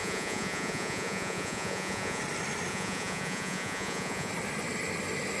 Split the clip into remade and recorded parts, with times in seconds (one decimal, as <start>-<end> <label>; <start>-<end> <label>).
0.0-2.2 remade; 2.2-2.7 recorded; 2.7-4.3 remade; 4.3-5.4 recorded